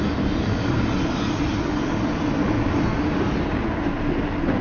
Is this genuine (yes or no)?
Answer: yes